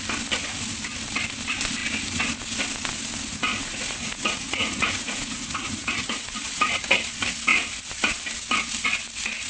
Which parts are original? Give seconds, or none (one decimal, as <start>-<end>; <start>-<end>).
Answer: 0.0-3.5; 6.8-9.5